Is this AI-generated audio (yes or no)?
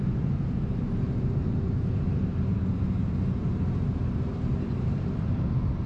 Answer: yes